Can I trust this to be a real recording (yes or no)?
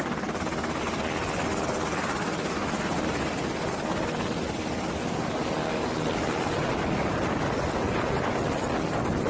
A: yes